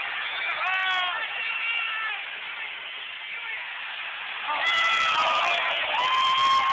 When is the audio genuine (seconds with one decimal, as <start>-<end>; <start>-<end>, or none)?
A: 0.0-6.7